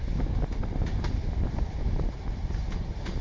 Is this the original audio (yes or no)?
yes